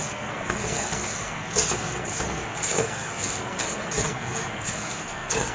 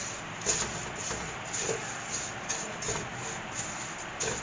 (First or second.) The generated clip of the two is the first